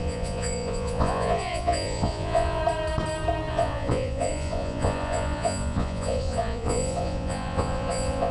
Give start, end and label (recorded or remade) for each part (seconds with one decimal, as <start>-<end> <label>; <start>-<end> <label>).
0.0-2.6 remade; 2.6-3.5 recorded; 3.5-8.3 remade